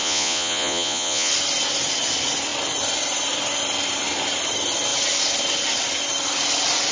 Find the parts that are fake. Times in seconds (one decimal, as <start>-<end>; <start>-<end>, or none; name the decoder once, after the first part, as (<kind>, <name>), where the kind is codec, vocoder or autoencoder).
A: 0.0-1.3 (vocoder, Vocos)